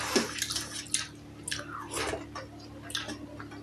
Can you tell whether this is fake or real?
real